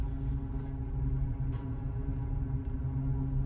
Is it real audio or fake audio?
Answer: real